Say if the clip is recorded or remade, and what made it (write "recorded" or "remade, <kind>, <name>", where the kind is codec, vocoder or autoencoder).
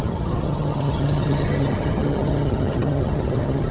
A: remade, vocoder, HiFi-GAN